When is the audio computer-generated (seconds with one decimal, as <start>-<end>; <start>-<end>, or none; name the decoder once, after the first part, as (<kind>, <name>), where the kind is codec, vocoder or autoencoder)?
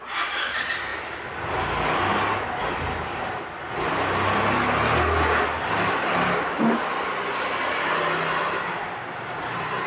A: none